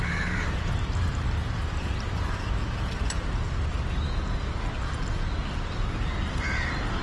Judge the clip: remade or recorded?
recorded